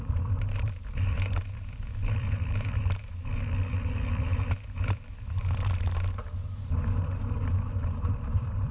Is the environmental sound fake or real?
fake